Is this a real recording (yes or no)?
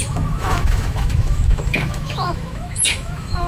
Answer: no